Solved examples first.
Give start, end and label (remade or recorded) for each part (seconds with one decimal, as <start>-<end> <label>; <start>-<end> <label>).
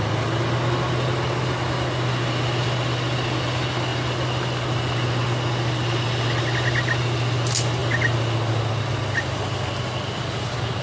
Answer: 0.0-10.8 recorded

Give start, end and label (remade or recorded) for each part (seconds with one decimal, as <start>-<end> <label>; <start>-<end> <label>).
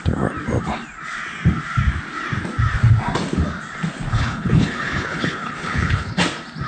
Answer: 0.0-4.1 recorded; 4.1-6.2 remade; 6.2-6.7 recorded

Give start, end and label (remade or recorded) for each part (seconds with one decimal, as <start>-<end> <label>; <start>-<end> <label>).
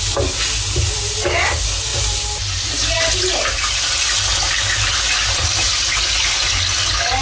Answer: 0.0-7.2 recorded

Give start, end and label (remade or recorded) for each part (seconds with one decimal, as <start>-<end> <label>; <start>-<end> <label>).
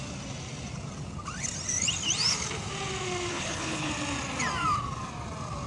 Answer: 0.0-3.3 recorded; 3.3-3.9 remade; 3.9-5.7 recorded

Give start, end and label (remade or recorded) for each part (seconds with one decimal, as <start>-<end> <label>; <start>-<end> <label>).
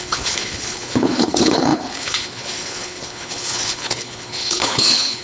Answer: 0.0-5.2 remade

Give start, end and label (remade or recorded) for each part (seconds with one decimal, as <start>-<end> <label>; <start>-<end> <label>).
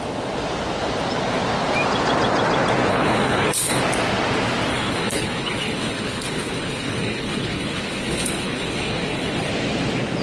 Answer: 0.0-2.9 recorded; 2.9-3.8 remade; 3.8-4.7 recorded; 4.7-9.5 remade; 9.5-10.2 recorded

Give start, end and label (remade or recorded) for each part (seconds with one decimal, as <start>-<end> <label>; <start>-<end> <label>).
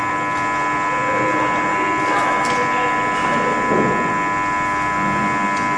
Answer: 0.0-5.8 recorded